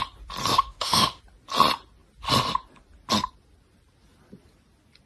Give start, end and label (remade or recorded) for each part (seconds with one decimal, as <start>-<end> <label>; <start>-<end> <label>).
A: 0.0-0.5 recorded; 0.5-1.2 remade; 1.2-5.1 recorded